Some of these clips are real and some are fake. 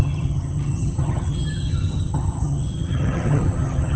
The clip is fake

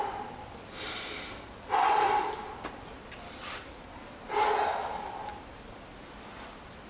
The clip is real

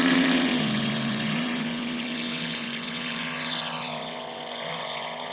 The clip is fake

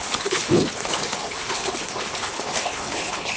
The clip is fake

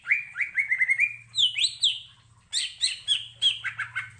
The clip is real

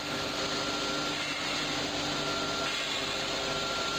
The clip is real